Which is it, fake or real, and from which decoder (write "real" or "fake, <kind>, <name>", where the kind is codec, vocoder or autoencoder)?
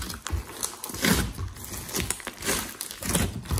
real